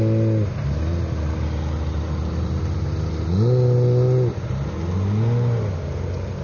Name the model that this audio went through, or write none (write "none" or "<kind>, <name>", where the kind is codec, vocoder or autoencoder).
none